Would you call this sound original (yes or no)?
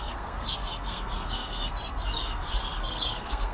no